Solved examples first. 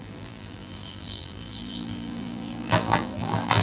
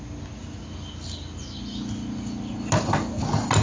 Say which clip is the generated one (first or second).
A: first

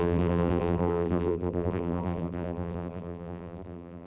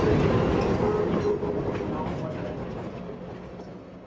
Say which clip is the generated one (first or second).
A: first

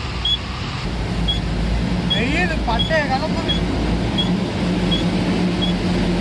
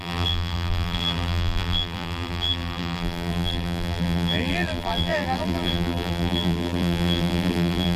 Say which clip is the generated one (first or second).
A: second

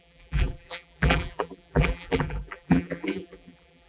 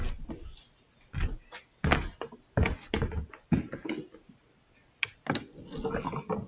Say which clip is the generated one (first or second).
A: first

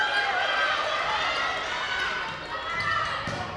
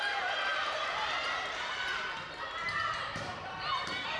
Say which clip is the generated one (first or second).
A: second